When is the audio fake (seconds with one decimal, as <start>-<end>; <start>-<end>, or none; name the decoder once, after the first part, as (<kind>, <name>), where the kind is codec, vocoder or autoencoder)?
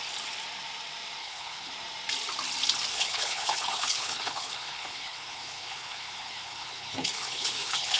1.2-1.7 (codec, HILCodec); 2.9-8.0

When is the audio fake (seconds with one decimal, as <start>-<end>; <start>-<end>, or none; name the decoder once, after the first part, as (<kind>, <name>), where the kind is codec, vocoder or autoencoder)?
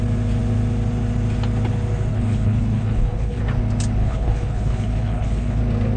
2.1-3.4 (codec, HILCodec); 4.0-5.6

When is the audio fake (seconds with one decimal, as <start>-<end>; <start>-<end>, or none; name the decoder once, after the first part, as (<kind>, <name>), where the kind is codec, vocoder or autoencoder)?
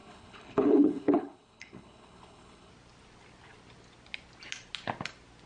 0.0-2.7 (codec, HILCodec)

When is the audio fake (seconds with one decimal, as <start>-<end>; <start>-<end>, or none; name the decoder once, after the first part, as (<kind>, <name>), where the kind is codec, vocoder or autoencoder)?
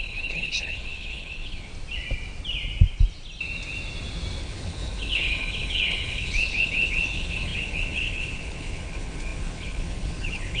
0.0-1.7 (codec, HILCodec); 4.4-10.6